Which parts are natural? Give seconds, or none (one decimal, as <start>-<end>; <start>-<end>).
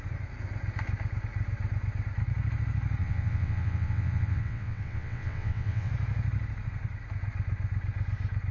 0.0-3.0; 5.9-8.5